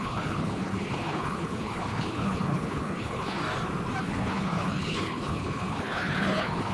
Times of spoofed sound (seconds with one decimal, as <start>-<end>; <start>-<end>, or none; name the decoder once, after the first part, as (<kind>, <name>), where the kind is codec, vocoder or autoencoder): 0.0-3.4 (codec, HILCodec); 4.0-6.7